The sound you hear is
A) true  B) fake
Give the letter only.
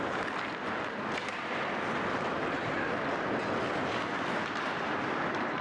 A